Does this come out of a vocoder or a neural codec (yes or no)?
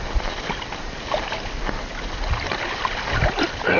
no